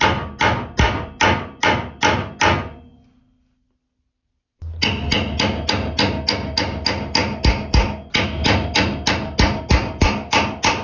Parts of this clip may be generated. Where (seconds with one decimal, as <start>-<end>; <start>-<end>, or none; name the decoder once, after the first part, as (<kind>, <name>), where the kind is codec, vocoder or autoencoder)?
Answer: none